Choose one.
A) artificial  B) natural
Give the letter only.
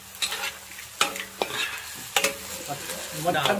B